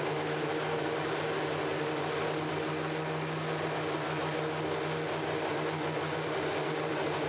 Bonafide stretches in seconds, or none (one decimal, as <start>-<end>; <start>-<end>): 0.0-7.3